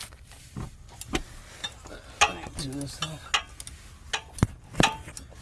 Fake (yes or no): no